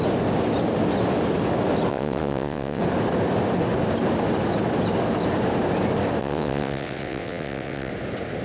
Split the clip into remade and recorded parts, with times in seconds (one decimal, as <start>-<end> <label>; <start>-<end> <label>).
0.0-1.9 recorded; 1.9-2.8 remade; 2.8-6.2 recorded; 6.2-7.9 remade; 7.9-8.4 recorded